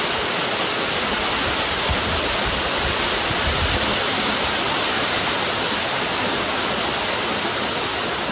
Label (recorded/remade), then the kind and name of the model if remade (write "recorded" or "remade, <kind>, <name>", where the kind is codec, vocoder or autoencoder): recorded